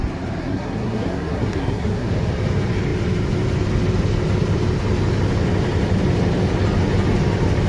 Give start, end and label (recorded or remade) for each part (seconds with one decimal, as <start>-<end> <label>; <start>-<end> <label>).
0.0-0.4 recorded; 0.4-2.1 remade; 2.1-7.7 recorded